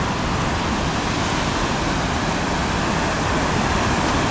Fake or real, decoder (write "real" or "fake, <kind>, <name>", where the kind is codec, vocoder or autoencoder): real